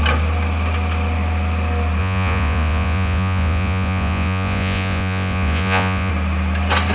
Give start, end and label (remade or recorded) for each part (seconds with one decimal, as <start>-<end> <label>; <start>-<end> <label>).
0.0-2.0 recorded; 2.0-6.1 remade; 6.1-6.9 recorded